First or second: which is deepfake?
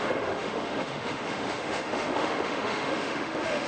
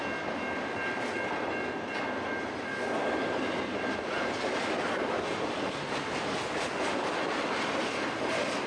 first